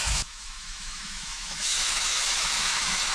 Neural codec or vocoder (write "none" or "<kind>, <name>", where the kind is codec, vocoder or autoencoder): autoencoder, DAC-VAE